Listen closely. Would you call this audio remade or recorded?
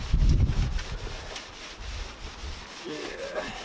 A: recorded